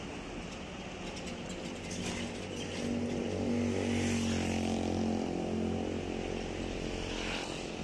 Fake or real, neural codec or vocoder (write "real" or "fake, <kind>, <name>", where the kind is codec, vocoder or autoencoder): real